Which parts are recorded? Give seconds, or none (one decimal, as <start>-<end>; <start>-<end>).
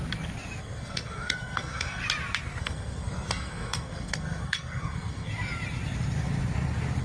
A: 0.0-0.6; 2.0-2.6; 5.3-7.0